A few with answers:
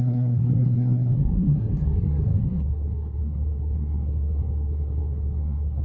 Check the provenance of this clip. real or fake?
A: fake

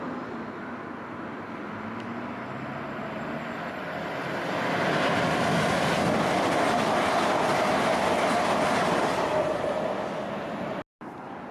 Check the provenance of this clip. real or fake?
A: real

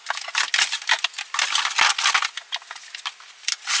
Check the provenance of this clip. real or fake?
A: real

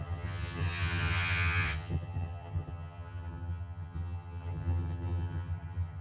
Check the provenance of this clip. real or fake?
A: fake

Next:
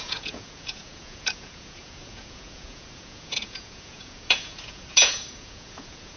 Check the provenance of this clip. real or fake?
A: fake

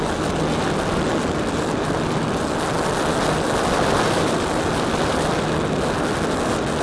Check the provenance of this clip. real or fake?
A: real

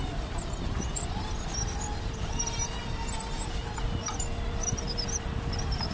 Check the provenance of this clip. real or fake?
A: fake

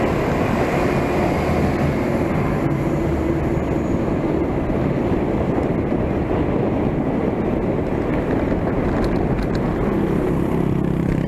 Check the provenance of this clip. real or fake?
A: real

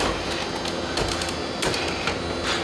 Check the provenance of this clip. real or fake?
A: real